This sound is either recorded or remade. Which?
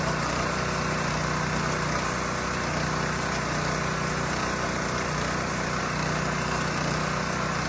recorded